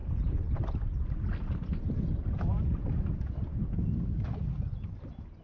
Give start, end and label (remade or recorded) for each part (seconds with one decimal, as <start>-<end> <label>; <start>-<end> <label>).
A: 0.0-5.4 recorded